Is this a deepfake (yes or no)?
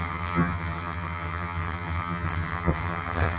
yes